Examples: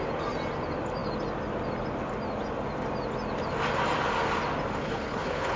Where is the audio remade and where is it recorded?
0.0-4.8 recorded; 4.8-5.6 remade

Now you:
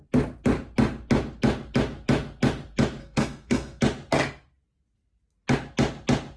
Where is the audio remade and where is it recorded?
0.0-3.0 recorded; 3.0-3.8 remade; 3.8-6.4 recorded

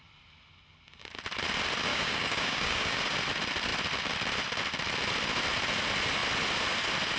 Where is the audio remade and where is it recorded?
0.0-1.9 recorded; 1.9-3.0 remade; 3.0-7.2 recorded

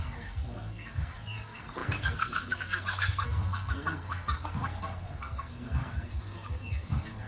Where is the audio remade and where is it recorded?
0.0-7.3 remade

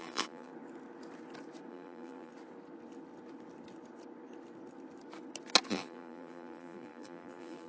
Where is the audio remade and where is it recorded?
0.0-0.5 remade; 0.5-1.7 recorded; 1.7-2.3 remade; 2.3-5.7 recorded; 5.7-7.7 remade

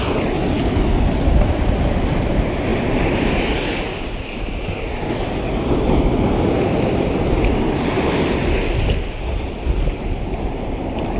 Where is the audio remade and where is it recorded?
0.0-11.2 recorded

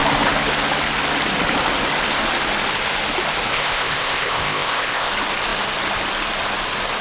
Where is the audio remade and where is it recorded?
0.0-3.5 recorded; 3.5-5.1 remade; 5.1-7.0 recorded